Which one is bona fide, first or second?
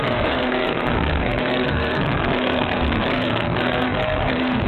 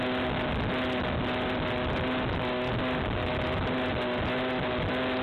second